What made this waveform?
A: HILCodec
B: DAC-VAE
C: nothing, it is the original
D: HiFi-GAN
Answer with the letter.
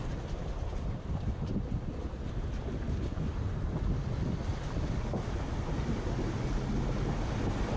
C